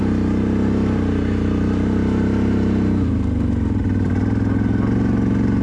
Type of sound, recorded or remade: recorded